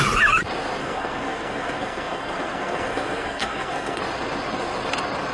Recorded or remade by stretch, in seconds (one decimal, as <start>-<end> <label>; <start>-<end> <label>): 0.0-0.8 recorded; 0.8-4.0 remade; 4.0-5.3 recorded